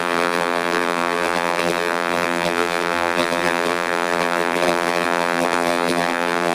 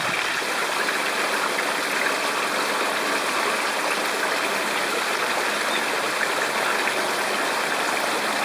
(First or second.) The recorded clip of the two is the second